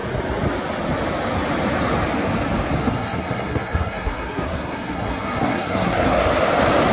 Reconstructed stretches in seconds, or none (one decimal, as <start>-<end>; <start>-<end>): 2.8-6.2